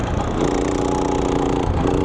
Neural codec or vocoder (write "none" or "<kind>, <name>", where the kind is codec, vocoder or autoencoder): none